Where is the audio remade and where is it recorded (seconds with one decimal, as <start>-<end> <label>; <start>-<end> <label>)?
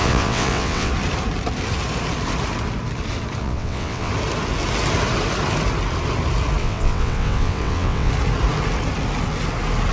0.0-0.9 remade; 0.9-3.4 recorded; 3.4-4.1 remade; 4.1-6.6 recorded; 6.6-8.1 remade; 8.1-9.9 recorded